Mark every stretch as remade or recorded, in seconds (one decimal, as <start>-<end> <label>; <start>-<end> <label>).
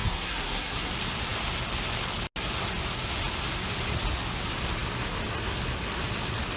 0.0-0.9 remade; 0.9-6.6 recorded